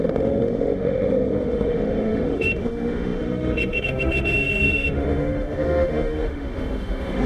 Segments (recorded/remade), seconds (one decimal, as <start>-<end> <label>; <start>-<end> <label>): 0.0-7.3 remade